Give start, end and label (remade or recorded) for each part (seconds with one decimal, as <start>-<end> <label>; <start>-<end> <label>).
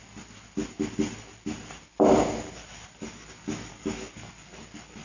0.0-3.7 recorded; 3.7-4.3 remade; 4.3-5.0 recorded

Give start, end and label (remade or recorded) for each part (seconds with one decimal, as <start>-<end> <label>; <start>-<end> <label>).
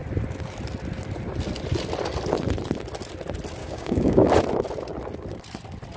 0.0-3.6 recorded; 3.6-4.3 remade; 4.3-6.0 recorded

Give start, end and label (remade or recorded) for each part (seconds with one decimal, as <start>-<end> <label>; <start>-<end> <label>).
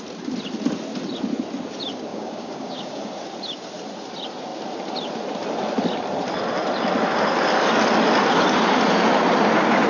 0.0-2.1 recorded; 2.1-3.1 remade; 3.1-9.9 recorded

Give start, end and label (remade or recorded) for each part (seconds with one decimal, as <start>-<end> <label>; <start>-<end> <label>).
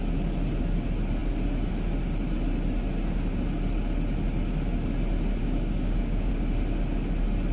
0.0-5.4 recorded; 5.4-6.3 remade; 6.3-7.5 recorded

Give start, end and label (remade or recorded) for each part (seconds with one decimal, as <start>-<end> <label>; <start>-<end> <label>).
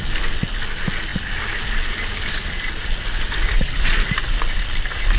0.0-5.2 recorded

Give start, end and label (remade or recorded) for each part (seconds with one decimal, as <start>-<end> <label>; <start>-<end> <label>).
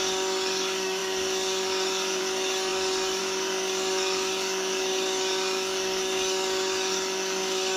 0.0-7.8 remade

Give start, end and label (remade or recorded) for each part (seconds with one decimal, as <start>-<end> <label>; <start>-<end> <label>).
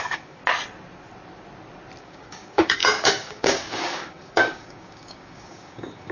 0.0-0.4 remade; 0.4-2.0 recorded; 2.0-6.1 remade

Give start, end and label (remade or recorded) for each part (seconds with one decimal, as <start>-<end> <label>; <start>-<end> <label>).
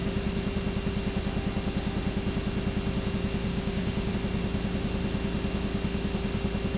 0.0-3.5 recorded; 3.5-4.1 remade; 4.1-6.8 recorded